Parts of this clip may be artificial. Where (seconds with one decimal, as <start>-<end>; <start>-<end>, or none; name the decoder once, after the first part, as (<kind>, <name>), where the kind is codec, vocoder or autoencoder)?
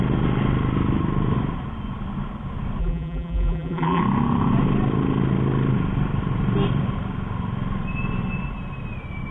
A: 2.8-4.0 (vocoder, BigVGAN v2)